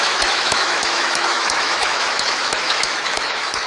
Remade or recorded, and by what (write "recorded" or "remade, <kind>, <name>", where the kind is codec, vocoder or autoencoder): remade, autoencoder, DAC-VAE